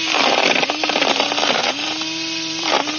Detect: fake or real fake